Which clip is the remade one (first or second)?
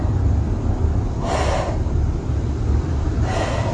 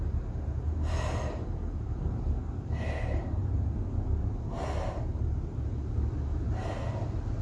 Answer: first